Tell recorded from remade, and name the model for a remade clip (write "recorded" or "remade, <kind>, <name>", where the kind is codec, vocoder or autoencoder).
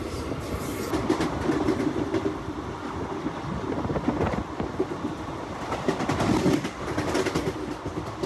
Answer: recorded